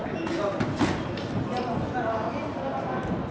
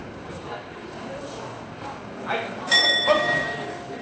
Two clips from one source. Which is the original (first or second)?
first